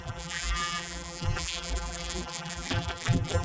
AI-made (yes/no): yes